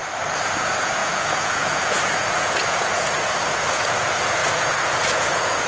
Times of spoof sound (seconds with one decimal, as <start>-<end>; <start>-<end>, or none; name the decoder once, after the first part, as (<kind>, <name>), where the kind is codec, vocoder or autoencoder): 0.6-5.7 (vocoder, Vocos)